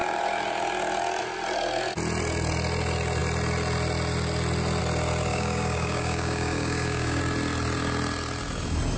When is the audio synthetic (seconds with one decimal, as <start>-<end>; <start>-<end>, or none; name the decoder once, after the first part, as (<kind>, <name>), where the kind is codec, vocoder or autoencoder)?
5.3-7.2 (codec, DAC)